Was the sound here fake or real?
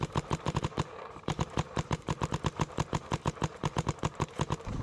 fake